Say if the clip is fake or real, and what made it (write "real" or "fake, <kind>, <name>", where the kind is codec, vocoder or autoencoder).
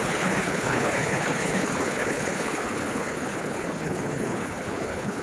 fake, codec, HILCodec